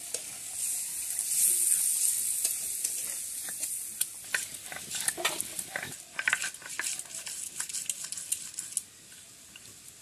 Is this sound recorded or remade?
recorded